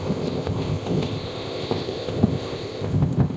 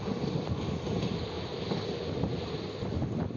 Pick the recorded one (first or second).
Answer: second